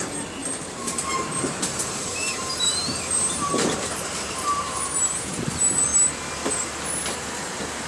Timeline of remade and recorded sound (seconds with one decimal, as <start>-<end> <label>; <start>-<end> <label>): 0.0-0.4 recorded; 0.4-5.0 remade; 5.0-7.9 recorded